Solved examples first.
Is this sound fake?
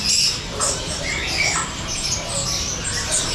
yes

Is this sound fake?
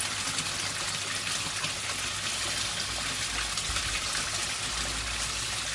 no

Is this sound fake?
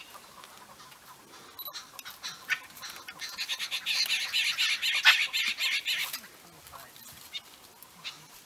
no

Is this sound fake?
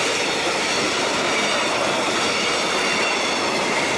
no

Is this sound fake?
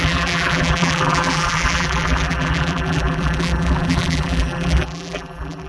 yes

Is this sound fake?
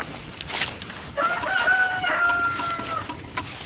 no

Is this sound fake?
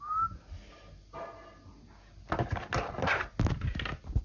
no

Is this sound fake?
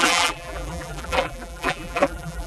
yes